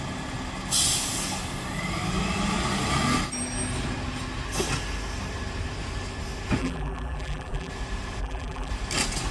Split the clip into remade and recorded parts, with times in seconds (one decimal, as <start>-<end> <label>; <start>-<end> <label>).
0.0-6.6 recorded; 6.6-7.7 remade; 7.7-8.2 recorded; 8.2-8.7 remade; 8.7-9.3 recorded